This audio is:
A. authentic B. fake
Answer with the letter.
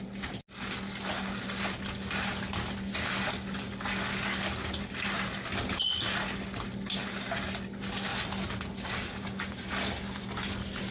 A